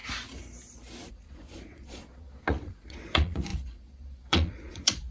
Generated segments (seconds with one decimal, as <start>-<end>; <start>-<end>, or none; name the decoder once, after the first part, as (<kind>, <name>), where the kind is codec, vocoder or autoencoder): 1.1-5.1 (vocoder, Vocos)